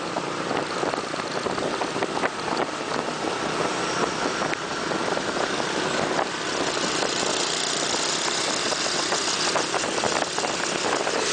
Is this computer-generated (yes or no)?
no